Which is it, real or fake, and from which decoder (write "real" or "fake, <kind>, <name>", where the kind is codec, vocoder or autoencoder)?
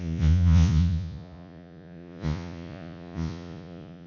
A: fake, vocoder, Vocos